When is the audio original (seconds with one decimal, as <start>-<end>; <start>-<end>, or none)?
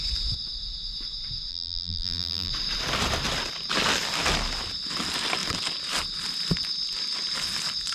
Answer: 0.0-1.5; 2.5-7.9